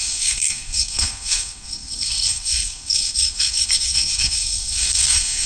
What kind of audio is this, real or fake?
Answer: fake